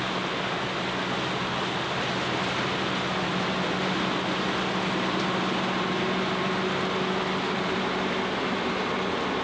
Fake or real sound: real